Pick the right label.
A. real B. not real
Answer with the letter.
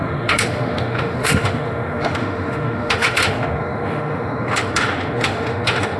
B